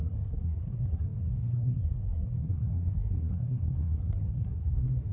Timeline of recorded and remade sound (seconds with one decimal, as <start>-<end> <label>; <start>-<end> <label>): 0.0-5.1 remade

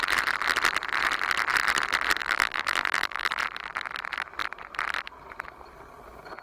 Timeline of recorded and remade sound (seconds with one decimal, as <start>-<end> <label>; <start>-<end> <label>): 0.0-2.2 recorded; 2.2-3.4 remade; 3.4-6.4 recorded

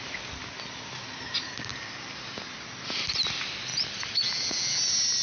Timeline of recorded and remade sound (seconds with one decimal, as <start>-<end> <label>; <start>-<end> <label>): 0.0-5.2 recorded

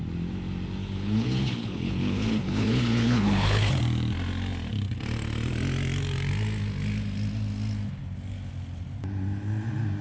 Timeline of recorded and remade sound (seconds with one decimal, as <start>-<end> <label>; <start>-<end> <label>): 0.0-0.8 recorded; 0.8-3.8 remade; 3.8-10.0 recorded

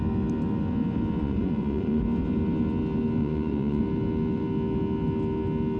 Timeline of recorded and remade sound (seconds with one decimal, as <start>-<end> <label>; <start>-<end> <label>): 0.0-1.2 recorded; 1.2-2.0 remade; 2.0-3.2 recorded; 3.2-3.8 remade; 3.8-5.8 recorded

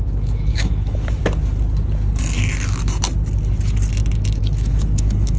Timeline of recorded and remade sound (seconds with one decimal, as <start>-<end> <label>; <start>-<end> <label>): 0.0-1.2 remade; 1.2-4.4 recorded; 4.4-5.4 remade

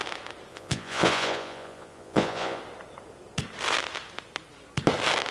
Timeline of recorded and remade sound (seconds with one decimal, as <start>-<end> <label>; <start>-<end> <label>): 0.0-0.5 recorded; 0.5-2.6 remade; 2.6-5.3 recorded

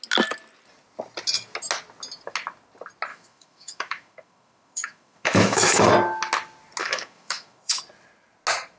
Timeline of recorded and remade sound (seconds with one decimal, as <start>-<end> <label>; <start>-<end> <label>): 0.0-3.1 recorded; 3.1-5.9 remade; 5.9-6.8 recorded; 6.8-7.8 remade; 7.8-8.8 recorded